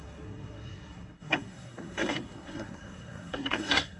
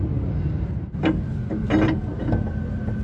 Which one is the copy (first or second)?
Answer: first